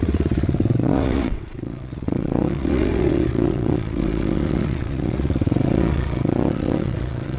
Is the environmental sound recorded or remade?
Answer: remade